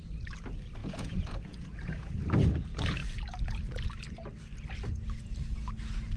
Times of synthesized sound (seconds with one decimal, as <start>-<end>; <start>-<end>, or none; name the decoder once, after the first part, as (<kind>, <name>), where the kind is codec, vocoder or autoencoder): 0.8-2.1 (vocoder, Vocos)